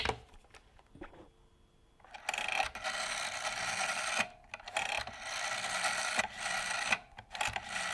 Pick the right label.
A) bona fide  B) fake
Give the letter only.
A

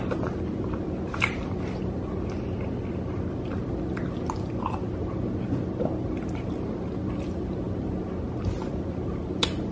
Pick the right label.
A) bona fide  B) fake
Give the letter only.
A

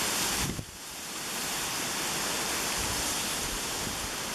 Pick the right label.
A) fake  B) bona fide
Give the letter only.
B